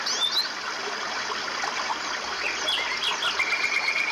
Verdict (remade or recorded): recorded